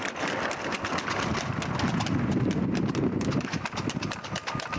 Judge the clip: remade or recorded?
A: recorded